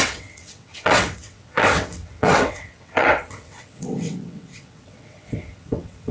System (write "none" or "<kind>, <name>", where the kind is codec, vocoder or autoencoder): vocoder, WaveNeXt